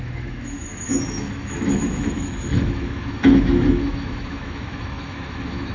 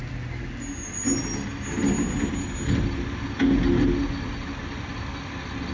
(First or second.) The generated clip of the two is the first